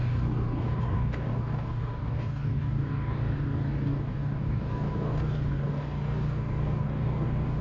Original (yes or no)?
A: no